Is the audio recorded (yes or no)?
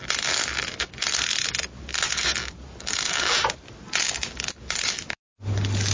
yes